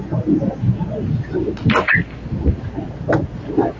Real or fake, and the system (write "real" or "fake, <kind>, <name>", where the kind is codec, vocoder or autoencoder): real